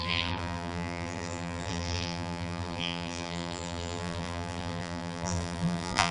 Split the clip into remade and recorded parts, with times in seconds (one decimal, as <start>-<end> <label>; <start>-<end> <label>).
0.0-6.1 remade